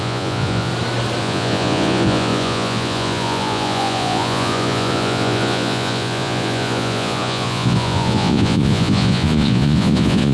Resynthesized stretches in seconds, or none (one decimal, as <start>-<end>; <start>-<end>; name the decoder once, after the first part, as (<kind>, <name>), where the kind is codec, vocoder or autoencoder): 0.0-0.7 (vocoder, Vocos); 1.2-10.3